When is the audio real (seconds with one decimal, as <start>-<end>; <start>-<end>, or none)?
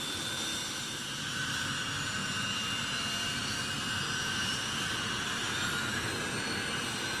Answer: 0.0-0.5; 1.5-7.2